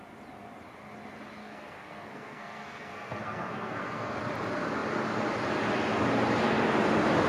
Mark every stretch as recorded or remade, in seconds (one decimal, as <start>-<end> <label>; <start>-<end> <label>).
0.0-1.4 recorded; 1.4-4.1 remade; 4.1-7.3 recorded